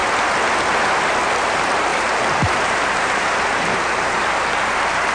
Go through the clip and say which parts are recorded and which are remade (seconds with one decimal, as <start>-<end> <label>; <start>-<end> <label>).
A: 0.0-1.4 recorded; 1.4-5.1 remade

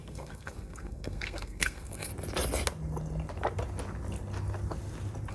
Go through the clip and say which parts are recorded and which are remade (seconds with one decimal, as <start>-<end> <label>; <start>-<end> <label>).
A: 0.0-2.1 remade; 2.1-5.3 recorded

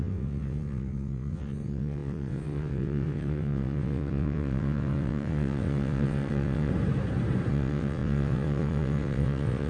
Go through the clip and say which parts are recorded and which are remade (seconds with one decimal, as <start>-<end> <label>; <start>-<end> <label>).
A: 0.0-6.7 remade; 6.7-7.5 recorded; 7.5-9.7 remade

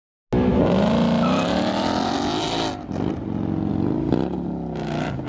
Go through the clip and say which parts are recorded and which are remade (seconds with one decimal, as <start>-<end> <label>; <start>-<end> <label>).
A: 0.0-5.3 recorded